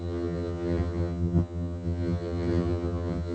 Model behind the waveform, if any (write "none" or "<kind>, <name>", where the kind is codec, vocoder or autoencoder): vocoder, HiFi-GAN